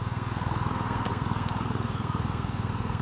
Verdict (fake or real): fake